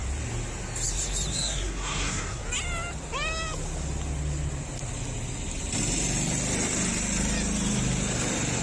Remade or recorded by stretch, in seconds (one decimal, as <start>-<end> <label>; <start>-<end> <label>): 0.0-1.3 recorded; 1.3-2.4 remade; 2.4-8.6 recorded

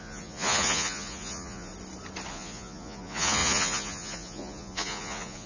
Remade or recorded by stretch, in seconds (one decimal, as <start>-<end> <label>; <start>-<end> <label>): 0.0-1.7 remade; 1.7-2.3 recorded; 2.3-5.5 remade

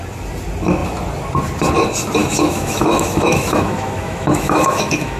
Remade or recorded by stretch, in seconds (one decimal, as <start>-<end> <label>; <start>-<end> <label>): 0.0-2.2 recorded; 2.2-5.2 remade

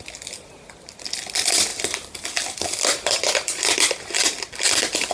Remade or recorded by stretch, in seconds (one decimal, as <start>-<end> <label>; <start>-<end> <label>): 0.0-1.7 recorded; 1.7-5.1 remade

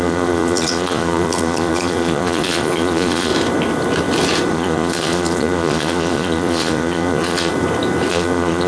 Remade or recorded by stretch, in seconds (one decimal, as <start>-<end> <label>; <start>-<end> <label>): 0.0-3.3 remade; 3.3-4.5 recorded; 4.5-7.5 remade; 7.5-8.1 recorded; 8.1-8.7 remade

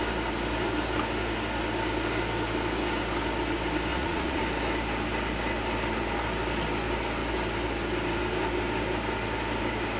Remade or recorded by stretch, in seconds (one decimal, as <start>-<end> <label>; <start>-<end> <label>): 0.0-3.9 recorded; 3.9-4.4 remade; 4.4-10.0 recorded

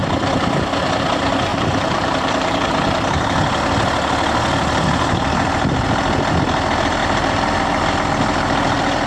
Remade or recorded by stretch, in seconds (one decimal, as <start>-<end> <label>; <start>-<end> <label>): 0.0-1.5 recorded; 1.5-3.2 remade; 3.2-7.0 recorded; 7.0-7.9 remade; 7.9-9.1 recorded